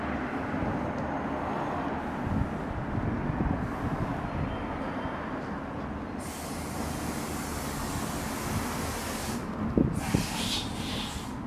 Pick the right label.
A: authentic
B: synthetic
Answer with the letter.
A